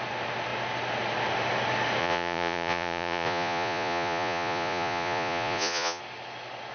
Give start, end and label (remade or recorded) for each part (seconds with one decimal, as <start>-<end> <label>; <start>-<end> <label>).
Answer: 0.0-2.0 recorded; 2.0-6.0 remade; 6.0-6.7 recorded